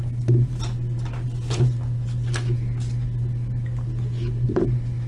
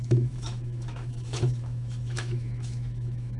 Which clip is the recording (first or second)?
first